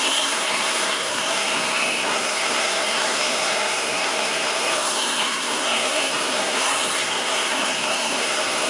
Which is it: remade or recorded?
remade